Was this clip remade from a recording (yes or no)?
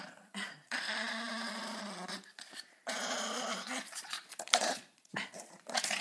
yes